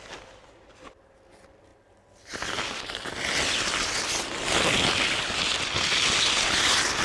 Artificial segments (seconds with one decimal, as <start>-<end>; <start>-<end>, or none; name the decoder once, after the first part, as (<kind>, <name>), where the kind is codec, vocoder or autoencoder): none